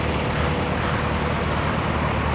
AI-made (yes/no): no